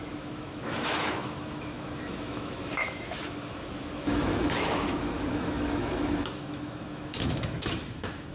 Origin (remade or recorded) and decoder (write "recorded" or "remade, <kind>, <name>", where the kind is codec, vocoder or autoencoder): remade, autoencoder, DAC-VAE